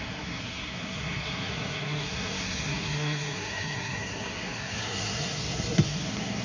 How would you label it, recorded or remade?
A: remade